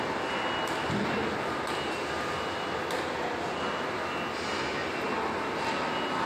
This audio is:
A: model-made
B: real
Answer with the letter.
B